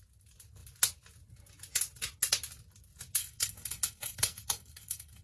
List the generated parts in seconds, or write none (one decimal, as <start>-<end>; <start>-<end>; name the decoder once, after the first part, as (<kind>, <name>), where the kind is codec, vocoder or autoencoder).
3.2-5.2 (codec, SNAC)

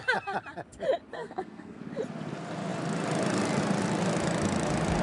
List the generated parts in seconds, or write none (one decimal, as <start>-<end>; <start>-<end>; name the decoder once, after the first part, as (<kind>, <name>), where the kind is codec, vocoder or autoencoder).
1.1-1.8 (codec, SNAC)

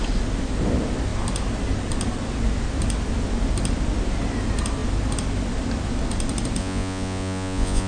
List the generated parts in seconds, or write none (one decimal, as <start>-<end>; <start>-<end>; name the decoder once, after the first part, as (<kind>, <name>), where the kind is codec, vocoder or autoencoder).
6.6-7.9 (vocoder, Vocos)

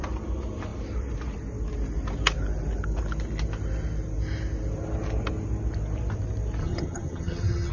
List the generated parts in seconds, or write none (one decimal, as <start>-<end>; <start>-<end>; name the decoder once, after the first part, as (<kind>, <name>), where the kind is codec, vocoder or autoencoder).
6.6-7.7 (vocoder, HiFi-GAN)

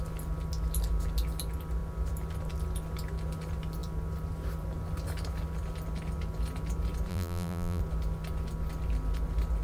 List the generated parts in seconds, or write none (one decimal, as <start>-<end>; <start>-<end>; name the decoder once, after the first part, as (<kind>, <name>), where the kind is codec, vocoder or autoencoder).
7.1-7.8 (vocoder, BigVGAN v2)

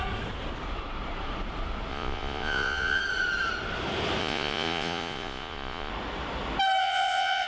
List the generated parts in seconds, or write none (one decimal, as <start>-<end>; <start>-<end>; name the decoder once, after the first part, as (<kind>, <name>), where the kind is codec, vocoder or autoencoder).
1.9-3.0 (vocoder, Vocos); 4.2-5.9; 6.8-7.5